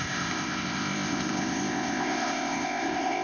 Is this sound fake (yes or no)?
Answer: yes